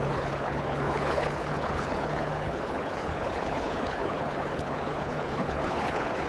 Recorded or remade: remade